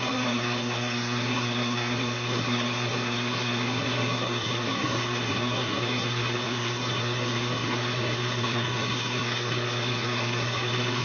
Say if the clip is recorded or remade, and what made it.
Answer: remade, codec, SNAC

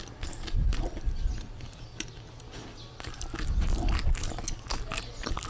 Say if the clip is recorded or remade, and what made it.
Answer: recorded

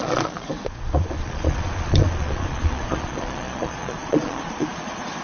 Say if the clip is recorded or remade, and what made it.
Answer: remade, vocoder, Vocos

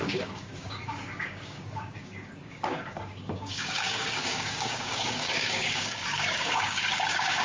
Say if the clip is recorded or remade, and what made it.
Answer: remade, codec, DAC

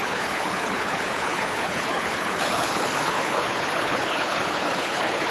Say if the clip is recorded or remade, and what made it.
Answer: remade, codec, HILCodec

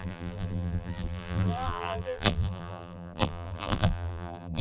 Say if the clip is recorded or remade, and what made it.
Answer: remade, vocoder, BigVGAN v2